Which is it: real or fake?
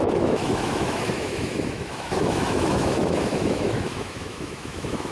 fake